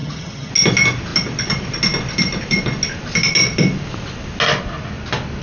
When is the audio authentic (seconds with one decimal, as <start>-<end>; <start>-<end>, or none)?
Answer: 0.5-5.4